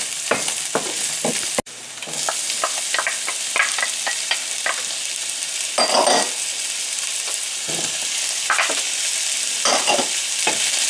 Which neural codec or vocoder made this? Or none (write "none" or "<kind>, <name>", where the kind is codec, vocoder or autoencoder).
none